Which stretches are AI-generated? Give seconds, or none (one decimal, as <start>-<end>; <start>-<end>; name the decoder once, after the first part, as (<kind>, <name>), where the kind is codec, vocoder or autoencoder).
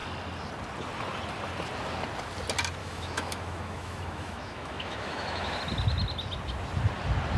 2.8-5.6 (autoencoder, DAC-VAE)